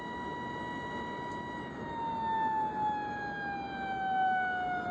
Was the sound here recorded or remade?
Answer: recorded